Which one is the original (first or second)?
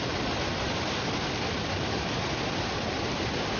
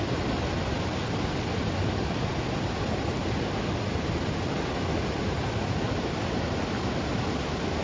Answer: second